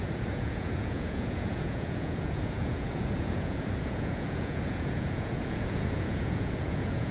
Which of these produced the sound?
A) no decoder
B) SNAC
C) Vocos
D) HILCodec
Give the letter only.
C